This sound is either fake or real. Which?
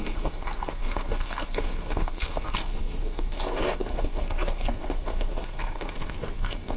fake